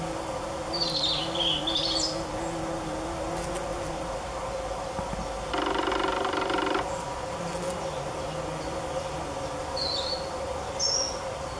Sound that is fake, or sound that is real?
real